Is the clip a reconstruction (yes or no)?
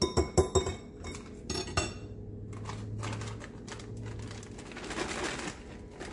no